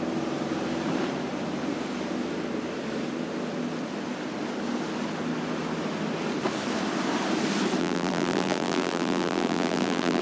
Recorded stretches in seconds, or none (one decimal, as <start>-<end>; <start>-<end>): 0.0-7.8